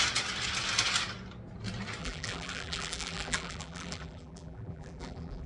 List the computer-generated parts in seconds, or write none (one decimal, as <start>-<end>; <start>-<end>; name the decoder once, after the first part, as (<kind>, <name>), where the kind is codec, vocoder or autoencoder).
2.0-5.5 (vocoder, BigVGAN v2)